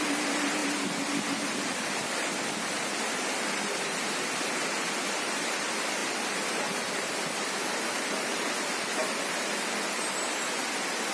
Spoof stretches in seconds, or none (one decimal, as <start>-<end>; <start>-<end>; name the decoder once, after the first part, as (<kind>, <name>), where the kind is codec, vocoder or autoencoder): 0.6-2.8 (vocoder, BigVGAN v2); 6.0-7.5; 9.0-9.9